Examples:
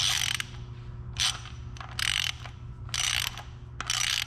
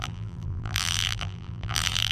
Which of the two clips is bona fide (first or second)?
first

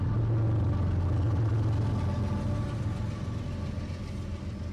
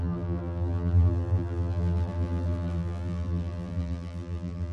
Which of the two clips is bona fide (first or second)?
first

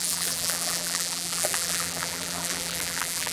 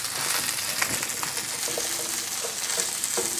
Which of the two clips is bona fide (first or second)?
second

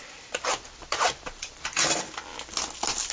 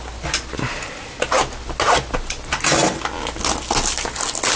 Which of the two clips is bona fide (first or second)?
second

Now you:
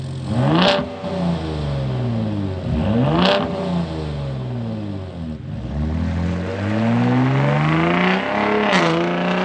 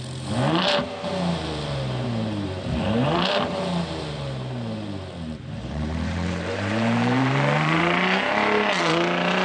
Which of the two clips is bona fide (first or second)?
first